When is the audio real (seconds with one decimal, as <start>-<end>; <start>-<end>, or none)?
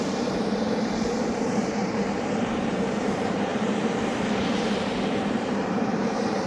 none